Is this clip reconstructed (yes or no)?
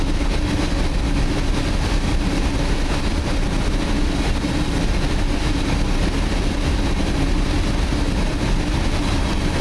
no